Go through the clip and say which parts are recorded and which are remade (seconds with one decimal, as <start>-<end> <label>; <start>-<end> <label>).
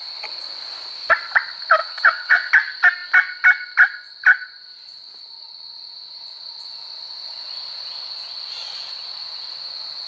0.0-1.8 recorded; 1.8-2.5 remade; 2.5-10.1 recorded